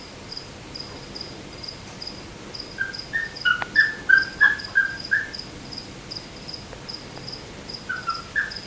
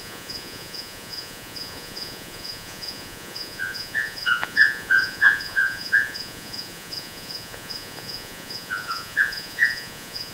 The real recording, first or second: first